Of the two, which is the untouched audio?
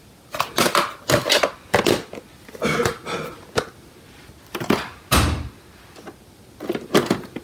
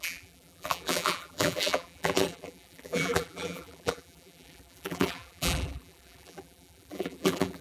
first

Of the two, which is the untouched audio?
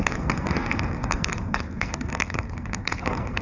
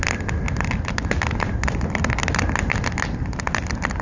second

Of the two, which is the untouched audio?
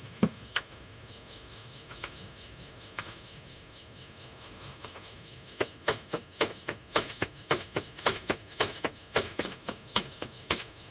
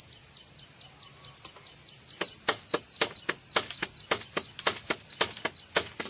second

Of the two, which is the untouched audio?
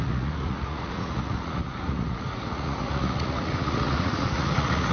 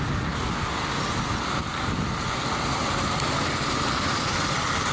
second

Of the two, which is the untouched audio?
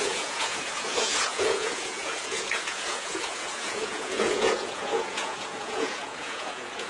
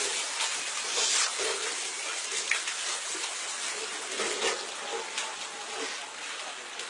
second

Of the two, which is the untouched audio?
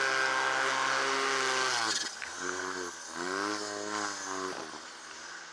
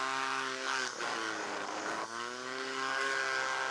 first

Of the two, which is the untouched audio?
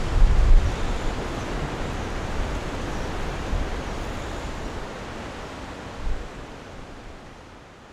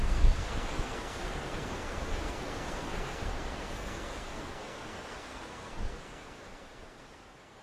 first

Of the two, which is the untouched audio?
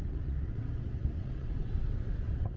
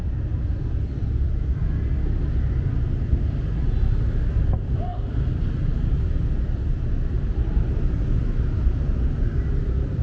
second